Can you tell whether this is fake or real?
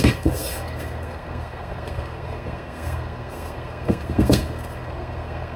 fake